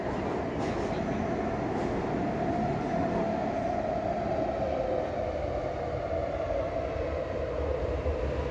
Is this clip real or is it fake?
real